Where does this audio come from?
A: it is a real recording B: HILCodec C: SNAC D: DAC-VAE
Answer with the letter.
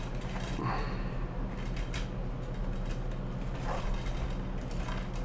A